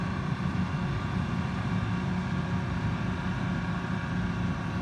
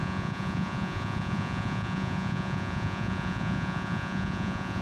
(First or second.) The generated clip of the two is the second